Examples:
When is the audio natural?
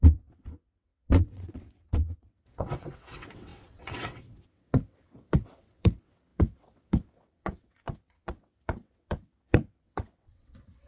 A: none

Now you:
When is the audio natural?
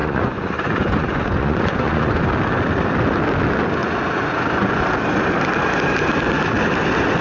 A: 2.2-3.8; 4.8-7.2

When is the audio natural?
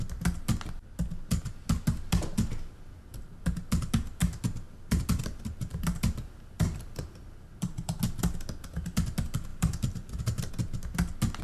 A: 0.0-5.7; 7.9-9.5; 10.5-11.4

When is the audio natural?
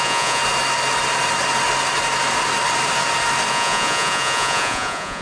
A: 0.4-3.5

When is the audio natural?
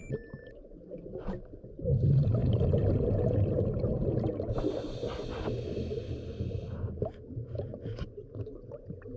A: 0.0-9.2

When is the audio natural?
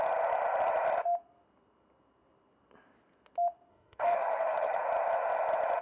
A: 0.0-3.7; 4.8-5.8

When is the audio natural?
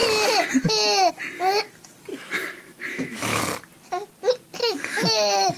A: 0.0-2.1; 3.4-4.6